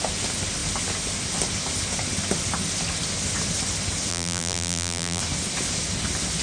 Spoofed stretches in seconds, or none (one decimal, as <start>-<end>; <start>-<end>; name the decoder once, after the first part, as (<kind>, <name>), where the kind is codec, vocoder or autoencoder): 4.1-5.2 (vocoder, BigVGAN v2)